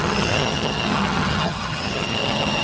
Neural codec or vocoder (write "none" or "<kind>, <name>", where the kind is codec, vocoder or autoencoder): vocoder, HiFi-GAN